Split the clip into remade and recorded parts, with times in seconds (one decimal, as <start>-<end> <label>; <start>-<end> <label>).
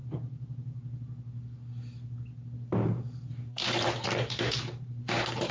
0.0-3.3 recorded; 3.3-5.5 remade